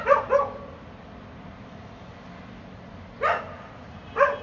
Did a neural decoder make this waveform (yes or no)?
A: no